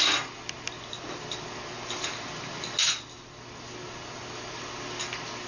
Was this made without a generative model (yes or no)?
yes